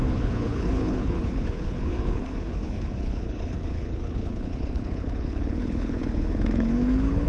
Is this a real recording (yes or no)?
no